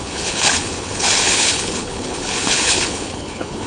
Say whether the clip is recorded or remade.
remade